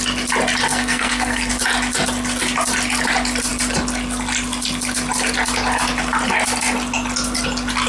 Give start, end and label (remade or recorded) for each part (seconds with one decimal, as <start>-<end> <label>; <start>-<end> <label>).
0.0-0.7 recorded; 0.7-1.5 remade; 1.5-7.9 recorded